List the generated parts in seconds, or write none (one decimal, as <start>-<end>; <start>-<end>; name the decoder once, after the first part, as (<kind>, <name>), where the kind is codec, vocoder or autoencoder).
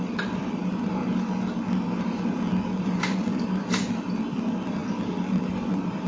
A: 0.0-1.0 (vocoder, BigVGAN v2); 2.8-6.1